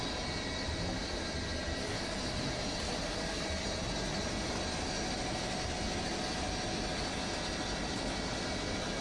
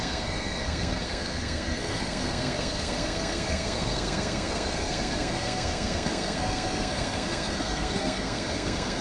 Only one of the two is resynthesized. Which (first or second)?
second